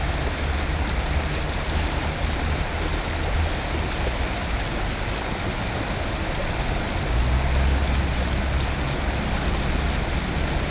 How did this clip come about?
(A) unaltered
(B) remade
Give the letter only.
A